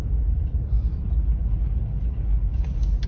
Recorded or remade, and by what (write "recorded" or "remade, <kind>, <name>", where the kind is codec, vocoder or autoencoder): recorded